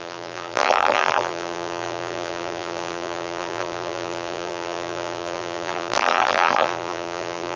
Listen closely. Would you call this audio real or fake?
fake